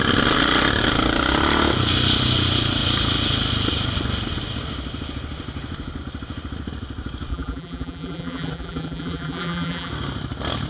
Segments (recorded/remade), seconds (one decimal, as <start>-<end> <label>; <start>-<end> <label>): 0.0-7.3 recorded; 7.3-9.9 remade; 9.9-10.7 recorded